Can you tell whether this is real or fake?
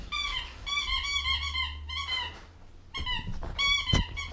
real